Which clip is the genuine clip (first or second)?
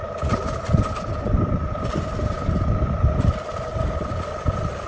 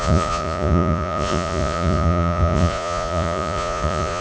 first